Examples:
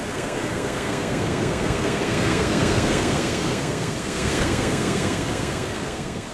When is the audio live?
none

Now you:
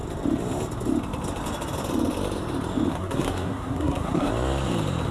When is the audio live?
0.0-2.9; 4.3-5.1

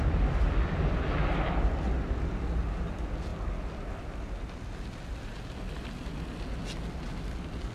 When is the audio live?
0.0-7.7

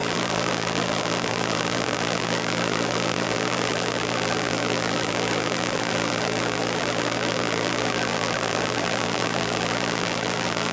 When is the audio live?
none